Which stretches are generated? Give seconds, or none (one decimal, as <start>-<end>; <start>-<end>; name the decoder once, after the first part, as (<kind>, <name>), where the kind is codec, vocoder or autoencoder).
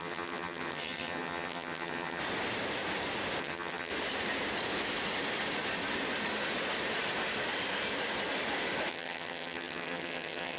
0.0-2.2 (vocoder, HiFi-GAN); 3.4-3.9; 8.9-10.6